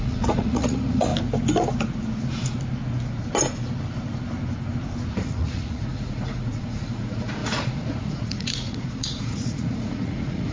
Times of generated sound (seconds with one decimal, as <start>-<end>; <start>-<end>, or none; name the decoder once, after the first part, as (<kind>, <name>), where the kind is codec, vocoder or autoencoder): 0.0-1.1 (vocoder, Vocos); 5.1-10.5